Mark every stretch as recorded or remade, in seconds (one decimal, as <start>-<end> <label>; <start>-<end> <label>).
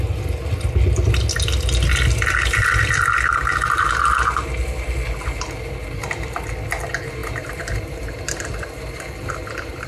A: 0.0-7.2 recorded; 7.2-8.1 remade; 8.1-9.9 recorded